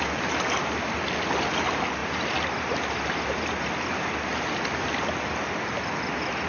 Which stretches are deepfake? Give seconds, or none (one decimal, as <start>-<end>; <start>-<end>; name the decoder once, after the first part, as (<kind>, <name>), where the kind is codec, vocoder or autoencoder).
none